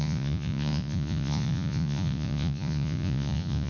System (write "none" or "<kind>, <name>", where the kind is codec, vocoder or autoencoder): vocoder, Vocos